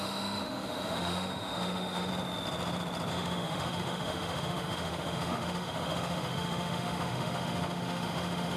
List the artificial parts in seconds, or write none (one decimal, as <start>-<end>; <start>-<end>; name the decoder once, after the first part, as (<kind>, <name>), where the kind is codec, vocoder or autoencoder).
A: 0.0-2.1 (autoencoder, DAC-VAE); 3.1-8.6